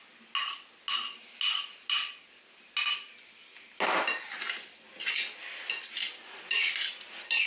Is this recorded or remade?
recorded